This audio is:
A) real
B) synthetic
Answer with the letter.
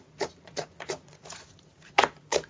B